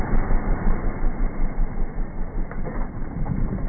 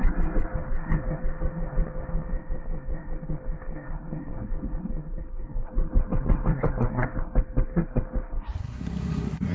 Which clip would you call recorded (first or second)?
first